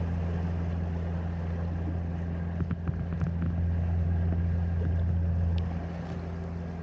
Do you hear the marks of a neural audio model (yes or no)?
no